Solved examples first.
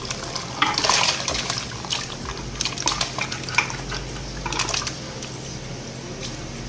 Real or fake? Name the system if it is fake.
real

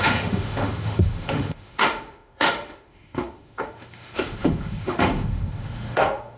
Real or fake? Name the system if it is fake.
fake, autoencoder, DAC-VAE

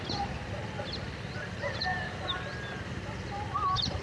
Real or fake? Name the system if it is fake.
real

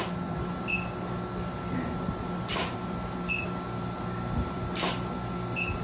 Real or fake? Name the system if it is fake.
real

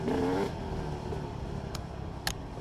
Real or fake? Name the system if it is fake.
real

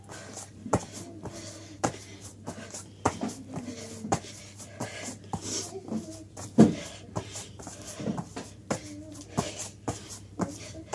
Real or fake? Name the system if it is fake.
fake, vocoder, BigVGAN v2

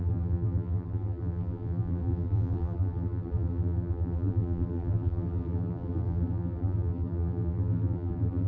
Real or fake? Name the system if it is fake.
fake, vocoder, BigVGAN v2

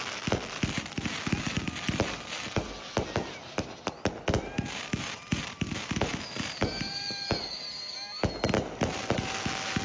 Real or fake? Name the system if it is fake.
real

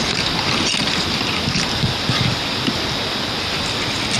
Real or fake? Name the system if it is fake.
real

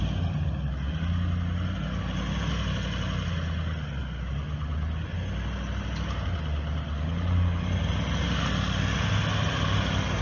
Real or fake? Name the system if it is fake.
real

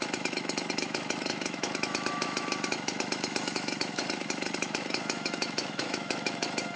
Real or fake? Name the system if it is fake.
fake, autoencoder, DAC-VAE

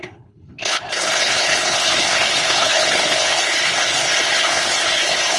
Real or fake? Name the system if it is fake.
fake, codec, HILCodec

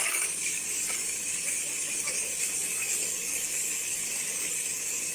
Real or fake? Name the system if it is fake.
fake, codec, DAC